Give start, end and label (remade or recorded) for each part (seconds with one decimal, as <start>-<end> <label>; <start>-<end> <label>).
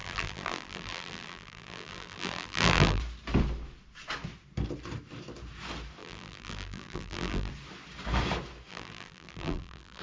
0.0-3.0 remade; 3.0-6.0 recorded; 6.0-7.5 remade; 7.5-8.7 recorded; 8.7-10.0 remade